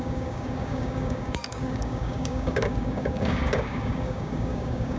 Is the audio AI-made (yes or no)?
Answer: yes